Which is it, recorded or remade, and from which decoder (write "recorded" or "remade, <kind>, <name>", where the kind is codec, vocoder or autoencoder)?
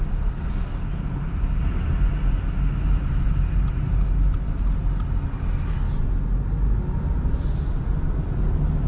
recorded